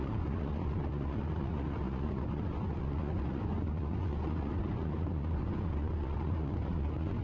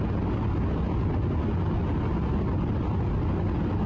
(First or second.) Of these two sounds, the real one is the second